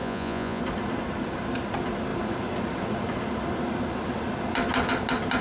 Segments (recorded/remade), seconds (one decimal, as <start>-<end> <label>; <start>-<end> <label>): 0.0-0.6 remade; 0.6-5.4 recorded